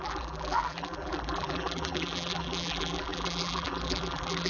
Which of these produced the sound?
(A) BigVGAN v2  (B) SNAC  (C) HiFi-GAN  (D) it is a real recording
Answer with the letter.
A